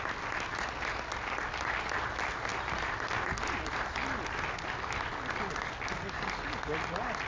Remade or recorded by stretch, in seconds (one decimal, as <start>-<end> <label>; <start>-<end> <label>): 0.0-7.3 recorded